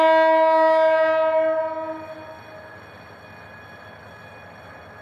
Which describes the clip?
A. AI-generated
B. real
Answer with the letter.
B